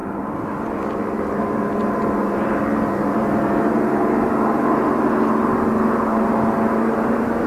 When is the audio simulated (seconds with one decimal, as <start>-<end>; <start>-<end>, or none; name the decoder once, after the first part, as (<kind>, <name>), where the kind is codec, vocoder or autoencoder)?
none